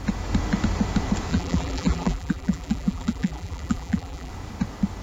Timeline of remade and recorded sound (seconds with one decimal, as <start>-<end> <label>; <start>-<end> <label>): 0.0-1.3 recorded; 1.3-4.3 remade; 4.3-5.0 recorded